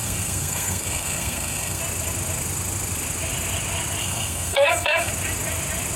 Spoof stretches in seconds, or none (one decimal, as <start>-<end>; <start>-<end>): 0.0-1.8; 4.0-5.1